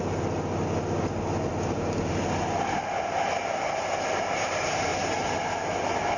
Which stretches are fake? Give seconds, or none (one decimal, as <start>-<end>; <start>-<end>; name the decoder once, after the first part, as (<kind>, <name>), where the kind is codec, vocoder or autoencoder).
none

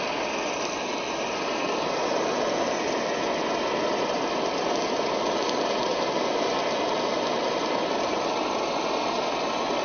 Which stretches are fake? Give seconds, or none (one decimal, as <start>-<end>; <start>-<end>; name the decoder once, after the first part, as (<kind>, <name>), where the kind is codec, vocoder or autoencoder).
none

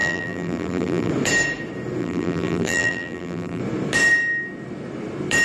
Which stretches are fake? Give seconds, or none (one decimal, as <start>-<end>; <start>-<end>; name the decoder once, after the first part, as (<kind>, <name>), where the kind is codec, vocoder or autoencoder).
0.0-1.1 (vocoder, BigVGAN v2); 2.0-3.6

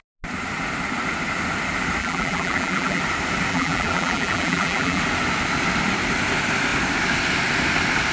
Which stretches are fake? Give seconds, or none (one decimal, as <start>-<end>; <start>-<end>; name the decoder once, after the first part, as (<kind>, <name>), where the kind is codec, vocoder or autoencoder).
2.0-3.0 (vocoder, BigVGAN v2); 3.5-5.0

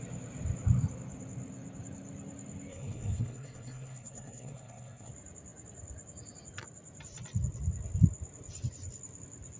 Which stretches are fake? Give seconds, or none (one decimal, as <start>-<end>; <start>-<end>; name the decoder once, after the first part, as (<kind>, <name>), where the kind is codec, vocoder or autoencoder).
2.7-5.1 (codec, SNAC)